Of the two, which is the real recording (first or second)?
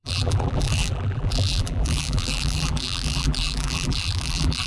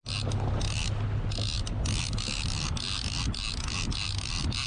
second